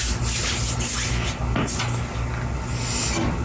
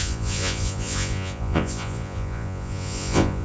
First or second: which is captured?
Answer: first